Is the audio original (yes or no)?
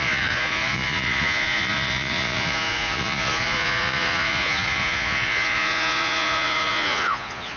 no